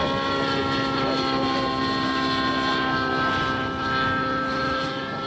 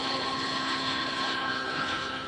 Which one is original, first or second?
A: first